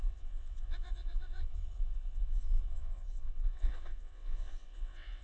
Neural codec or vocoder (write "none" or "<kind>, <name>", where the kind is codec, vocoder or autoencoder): vocoder, WaveNeXt